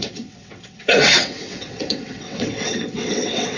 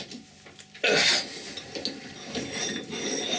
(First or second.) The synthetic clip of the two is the first